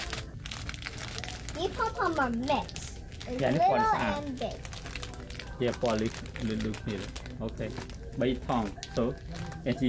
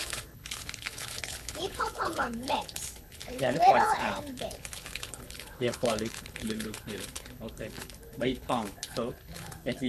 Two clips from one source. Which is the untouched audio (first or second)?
first